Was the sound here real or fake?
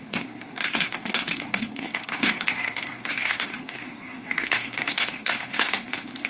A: fake